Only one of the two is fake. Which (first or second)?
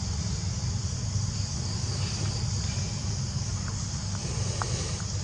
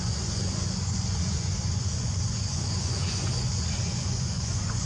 second